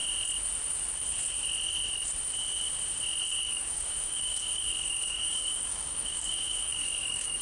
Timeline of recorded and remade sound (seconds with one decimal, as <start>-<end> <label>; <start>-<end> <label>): 0.0-3.3 recorded; 3.3-7.4 remade